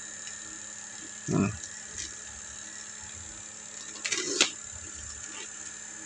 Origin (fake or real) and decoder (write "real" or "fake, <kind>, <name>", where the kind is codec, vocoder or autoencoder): real